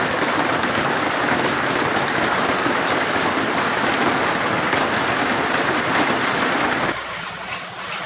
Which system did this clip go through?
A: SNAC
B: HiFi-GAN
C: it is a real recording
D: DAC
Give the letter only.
C